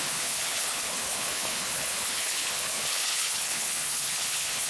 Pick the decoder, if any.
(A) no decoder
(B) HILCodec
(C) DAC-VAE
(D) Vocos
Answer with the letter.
B